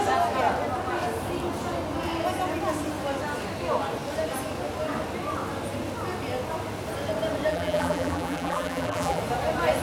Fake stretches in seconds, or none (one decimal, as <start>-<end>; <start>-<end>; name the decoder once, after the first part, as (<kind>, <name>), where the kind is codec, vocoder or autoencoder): 7.5-9.2 (vocoder, BigVGAN v2)